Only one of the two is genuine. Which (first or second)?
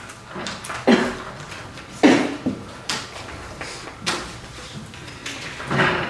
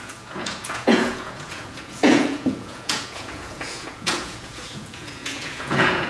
first